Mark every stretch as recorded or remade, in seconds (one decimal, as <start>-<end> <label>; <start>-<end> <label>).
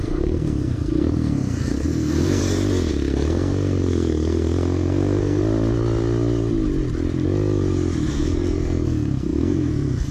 0.0-2.4 remade; 2.4-2.9 recorded; 2.9-5.4 remade; 5.4-8.1 recorded; 8.1-10.1 remade